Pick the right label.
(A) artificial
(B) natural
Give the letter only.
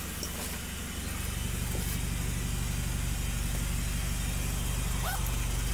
B